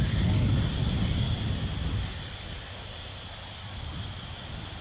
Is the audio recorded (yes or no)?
yes